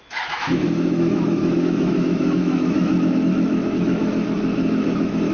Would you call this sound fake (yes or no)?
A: yes